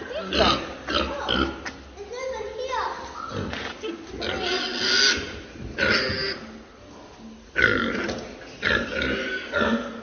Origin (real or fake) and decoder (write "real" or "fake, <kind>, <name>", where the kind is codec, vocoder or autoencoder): real